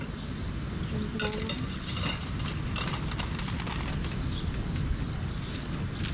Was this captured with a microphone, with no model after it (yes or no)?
yes